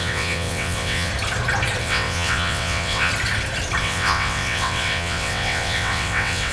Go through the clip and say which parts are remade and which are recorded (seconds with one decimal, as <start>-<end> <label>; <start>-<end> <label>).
0.0-1.1 remade; 1.1-1.8 recorded; 1.8-3.1 remade; 3.1-3.8 recorded; 3.8-6.5 remade